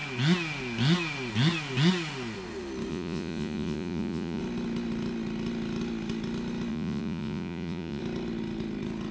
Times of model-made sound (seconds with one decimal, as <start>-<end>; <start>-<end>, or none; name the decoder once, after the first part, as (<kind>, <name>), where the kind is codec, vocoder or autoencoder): 2.9-4.4 (vocoder, Vocos); 6.7-8.0